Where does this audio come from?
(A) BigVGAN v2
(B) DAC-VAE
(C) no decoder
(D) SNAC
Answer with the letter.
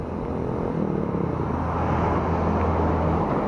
C